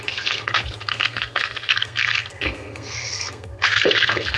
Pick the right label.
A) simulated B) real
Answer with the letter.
A